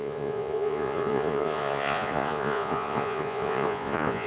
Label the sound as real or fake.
fake